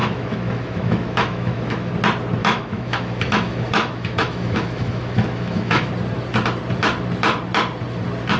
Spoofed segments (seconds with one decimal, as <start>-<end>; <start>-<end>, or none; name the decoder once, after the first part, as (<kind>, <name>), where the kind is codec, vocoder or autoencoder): 0.0-1.9 (autoencoder, DAC-VAE); 2.4-5.9